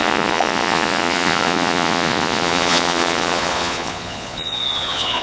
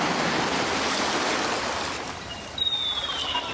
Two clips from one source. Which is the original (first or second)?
second